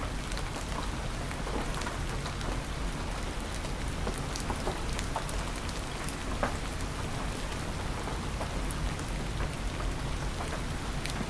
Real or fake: real